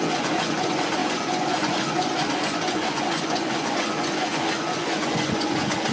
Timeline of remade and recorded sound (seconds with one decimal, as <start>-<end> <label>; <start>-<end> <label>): 0.0-5.9 remade